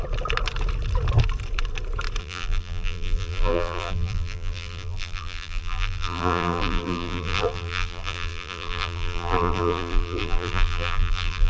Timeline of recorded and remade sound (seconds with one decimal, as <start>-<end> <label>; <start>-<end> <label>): 0.0-2.2 recorded; 2.2-11.5 remade